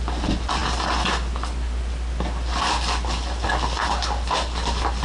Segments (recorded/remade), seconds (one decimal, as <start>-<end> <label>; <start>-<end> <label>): 0.0-5.0 recorded